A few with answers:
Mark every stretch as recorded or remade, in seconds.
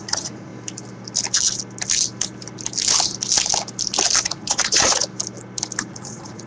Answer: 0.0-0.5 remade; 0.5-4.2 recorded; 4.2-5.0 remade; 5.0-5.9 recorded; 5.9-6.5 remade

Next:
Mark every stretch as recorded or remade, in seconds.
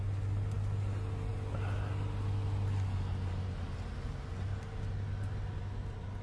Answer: 0.0-6.2 recorded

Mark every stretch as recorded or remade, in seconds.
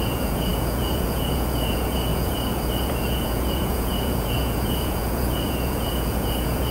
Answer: 0.0-6.7 remade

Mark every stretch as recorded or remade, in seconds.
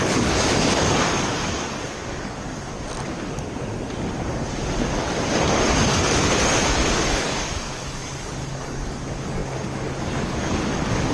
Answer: 0.0-2.7 remade; 2.7-6.2 recorded; 6.2-11.1 remade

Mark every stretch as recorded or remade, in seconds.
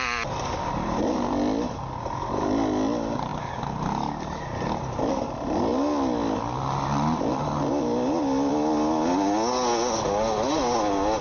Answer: 0.0-11.2 recorded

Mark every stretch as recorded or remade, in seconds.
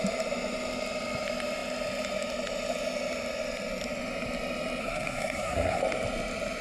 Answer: 0.0-4.8 recorded; 4.8-5.8 remade; 5.8-6.6 recorded